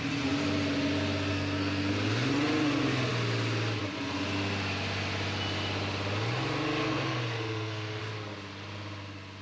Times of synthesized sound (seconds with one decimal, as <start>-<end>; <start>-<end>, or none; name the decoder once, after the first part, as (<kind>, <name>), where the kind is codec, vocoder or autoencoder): 1.3-1.9 (codec, SNAC); 6.8-8.0

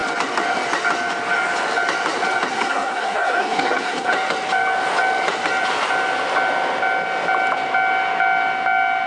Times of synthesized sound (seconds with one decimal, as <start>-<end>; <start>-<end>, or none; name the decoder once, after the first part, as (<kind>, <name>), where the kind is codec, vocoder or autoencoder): 2.5-4.1 (codec, SNAC)

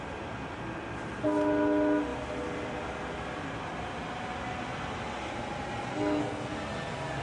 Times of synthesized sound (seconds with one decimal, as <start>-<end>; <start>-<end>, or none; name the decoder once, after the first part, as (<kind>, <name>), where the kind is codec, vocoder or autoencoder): 5.9-6.5 (codec, SNAC)

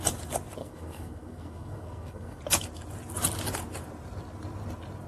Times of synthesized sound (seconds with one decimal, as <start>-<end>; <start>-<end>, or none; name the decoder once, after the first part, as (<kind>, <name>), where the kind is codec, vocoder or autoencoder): 0.6-2.4 (codec, SNAC)

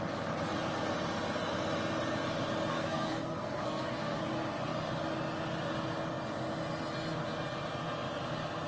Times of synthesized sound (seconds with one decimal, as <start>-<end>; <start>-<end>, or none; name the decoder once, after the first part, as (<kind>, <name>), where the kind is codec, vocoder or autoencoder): 2.7-4.2 (codec, SNAC)